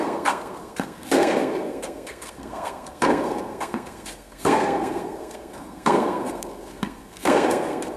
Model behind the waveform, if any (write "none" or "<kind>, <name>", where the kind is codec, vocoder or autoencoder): codec, SNAC